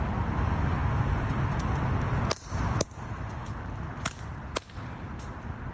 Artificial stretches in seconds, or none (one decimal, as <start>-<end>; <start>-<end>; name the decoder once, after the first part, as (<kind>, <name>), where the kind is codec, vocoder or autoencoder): none